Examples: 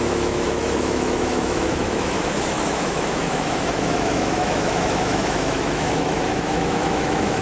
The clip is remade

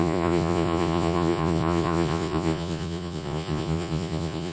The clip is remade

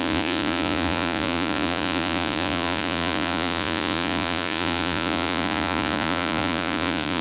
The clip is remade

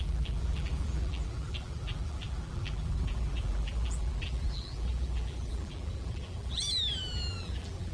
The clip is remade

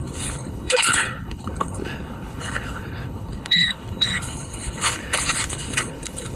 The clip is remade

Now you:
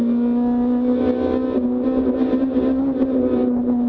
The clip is recorded